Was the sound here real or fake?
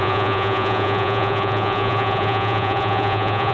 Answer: fake